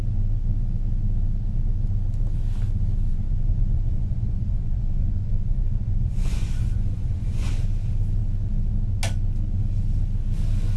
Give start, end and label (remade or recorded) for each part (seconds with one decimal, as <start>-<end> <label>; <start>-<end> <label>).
0.0-3.1 recorded; 3.1-7.5 remade; 7.5-10.8 recorded